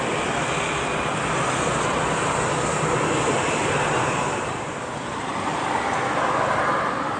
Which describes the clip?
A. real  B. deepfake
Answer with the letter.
A